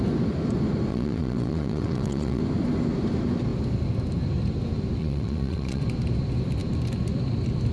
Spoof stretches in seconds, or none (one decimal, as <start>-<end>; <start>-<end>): 0.9-2.4; 5.0-5.8

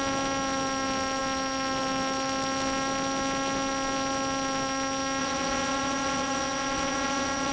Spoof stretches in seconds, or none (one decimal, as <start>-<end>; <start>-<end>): 5.2-7.5